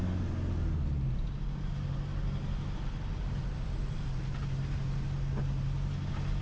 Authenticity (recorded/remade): recorded